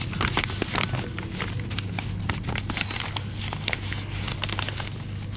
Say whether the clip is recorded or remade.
recorded